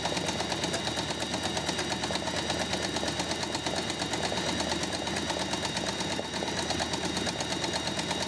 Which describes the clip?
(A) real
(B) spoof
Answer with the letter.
A